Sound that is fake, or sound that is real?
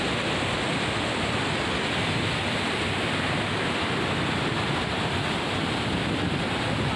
real